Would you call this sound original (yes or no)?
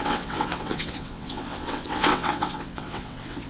no